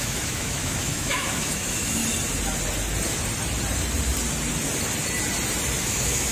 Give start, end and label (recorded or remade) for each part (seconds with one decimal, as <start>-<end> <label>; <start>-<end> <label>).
0.0-2.0 remade; 2.0-5.8 recorded; 5.8-6.3 remade

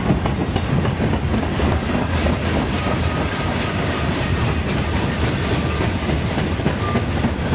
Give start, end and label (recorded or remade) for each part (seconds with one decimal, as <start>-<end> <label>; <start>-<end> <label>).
0.0-2.2 recorded; 2.2-4.9 remade; 4.9-7.5 recorded

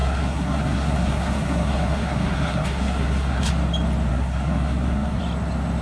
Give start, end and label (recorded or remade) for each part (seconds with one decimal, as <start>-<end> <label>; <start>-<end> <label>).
0.0-3.5 remade; 3.5-4.1 recorded; 4.1-5.2 remade; 5.2-5.8 recorded

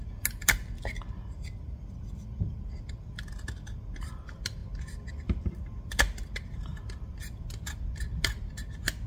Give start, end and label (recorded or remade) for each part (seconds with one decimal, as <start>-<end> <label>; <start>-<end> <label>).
0.0-6.7 recorded; 6.7-7.4 remade; 7.4-9.1 recorded